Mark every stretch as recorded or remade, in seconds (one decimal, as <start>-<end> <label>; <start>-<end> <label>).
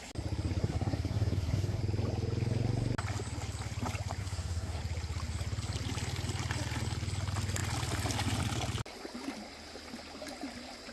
0.0-0.6 recorded; 0.6-1.8 remade; 1.8-4.2 recorded; 4.2-4.8 remade; 4.8-10.9 recorded